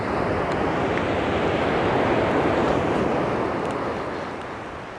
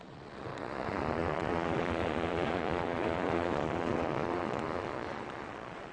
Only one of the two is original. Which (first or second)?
first